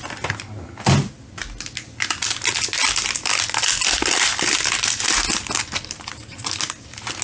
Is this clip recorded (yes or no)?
yes